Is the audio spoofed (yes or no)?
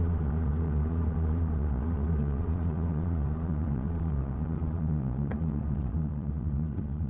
yes